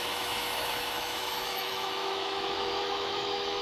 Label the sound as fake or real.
fake